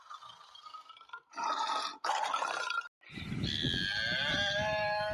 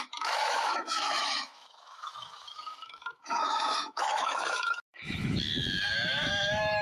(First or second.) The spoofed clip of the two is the second